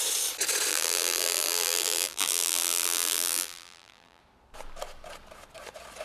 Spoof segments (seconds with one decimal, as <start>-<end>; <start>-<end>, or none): 0.7-4.2